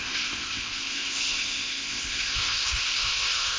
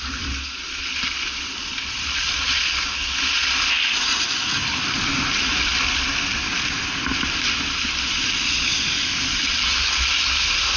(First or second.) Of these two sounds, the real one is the second